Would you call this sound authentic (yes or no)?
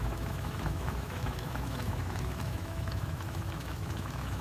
no